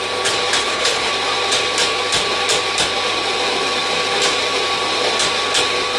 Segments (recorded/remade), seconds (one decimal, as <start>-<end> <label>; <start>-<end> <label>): 0.0-0.6 recorded; 0.6-1.1 remade; 1.1-6.0 recorded